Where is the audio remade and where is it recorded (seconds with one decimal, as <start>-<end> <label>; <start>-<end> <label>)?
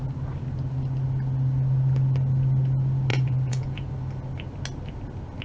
0.0-3.1 recorded; 3.1-3.9 remade; 3.9-5.4 recorded